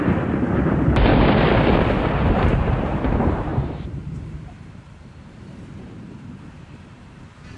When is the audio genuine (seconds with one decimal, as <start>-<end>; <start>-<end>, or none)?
1.1-2.3